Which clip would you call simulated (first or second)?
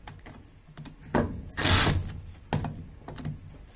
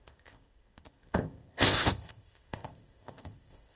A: second